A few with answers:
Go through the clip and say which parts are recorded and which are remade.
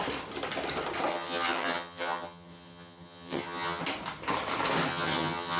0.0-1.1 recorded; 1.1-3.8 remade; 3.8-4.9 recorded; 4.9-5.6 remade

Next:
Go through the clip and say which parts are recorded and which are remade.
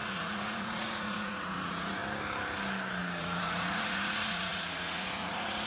0.0-2.0 remade; 2.0-3.2 recorded; 3.2-5.7 remade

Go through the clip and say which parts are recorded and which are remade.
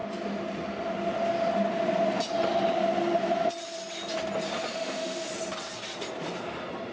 0.0-4.7 recorded; 4.7-5.3 remade; 5.3-6.9 recorded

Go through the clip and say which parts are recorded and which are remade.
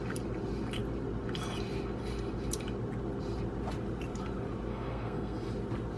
0.0-4.7 recorded; 4.7-5.5 remade; 5.5-6.0 recorded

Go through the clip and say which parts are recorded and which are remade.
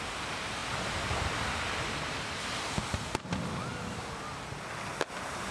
0.0-5.5 recorded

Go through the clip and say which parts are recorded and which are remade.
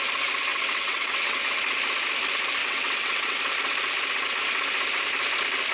0.0-0.5 recorded; 0.5-1.4 remade; 1.4-2.6 recorded; 2.6-3.4 remade; 3.4-5.7 recorded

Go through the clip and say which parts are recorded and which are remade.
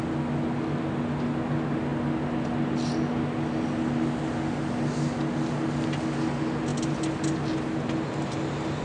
0.0-8.8 recorded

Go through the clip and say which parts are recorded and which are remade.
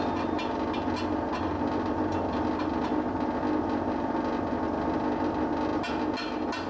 0.0-6.7 recorded